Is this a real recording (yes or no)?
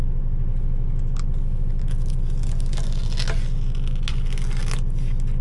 yes